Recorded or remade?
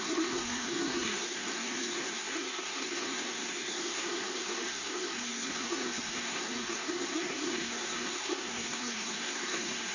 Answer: remade